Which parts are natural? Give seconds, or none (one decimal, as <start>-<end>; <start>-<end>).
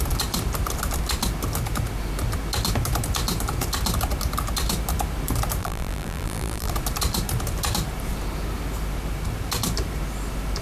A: 0.0-5.6; 6.7-10.6